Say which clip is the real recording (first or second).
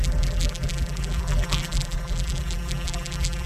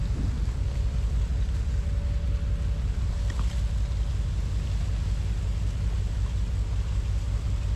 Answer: second